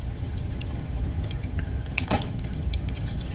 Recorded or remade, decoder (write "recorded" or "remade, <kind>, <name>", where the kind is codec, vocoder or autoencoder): remade, vocoder, HiFi-GAN